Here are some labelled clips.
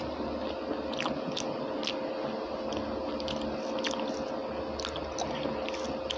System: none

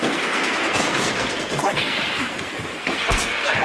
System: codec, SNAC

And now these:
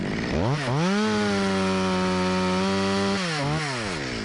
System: none